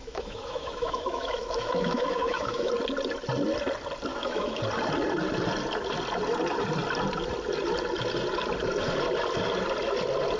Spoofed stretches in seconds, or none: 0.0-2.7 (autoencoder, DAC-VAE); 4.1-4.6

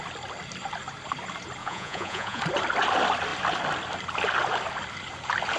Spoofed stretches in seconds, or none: 1.6-2.4 (vocoder, Vocos)

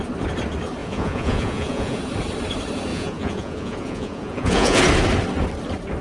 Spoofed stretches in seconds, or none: 0.8-2.0 (vocoder, Vocos); 2.9-4.8

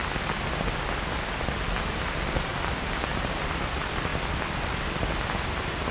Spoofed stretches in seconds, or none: 1.9-2.5 (vocoder, BigVGAN v2); 3.1-5.9

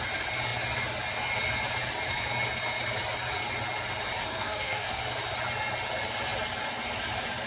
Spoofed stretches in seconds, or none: 4.2-5.0 (codec, SNAC)

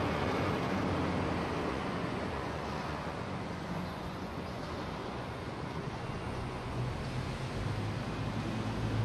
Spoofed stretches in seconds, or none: 0.0-0.8 (vocoder, Vocos); 1.7-4.6; 5.0-6.9

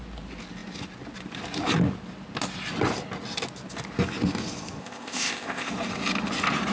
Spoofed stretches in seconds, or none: 4.8-5.7 (codec, ZipCodec)

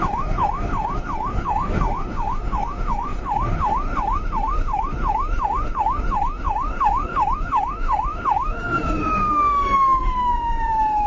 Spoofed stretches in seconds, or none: 0.0-11.1 (autoencoder, DAC-VAE)